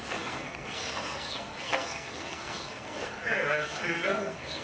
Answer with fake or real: fake